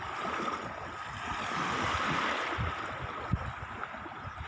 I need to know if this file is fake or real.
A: real